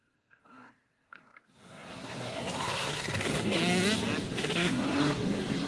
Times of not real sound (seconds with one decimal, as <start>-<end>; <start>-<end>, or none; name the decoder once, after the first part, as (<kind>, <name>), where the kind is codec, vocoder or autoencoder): 0.0-3.6 (codec, SNAC); 4.3-5.7